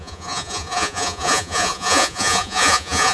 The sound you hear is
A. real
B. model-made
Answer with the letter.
B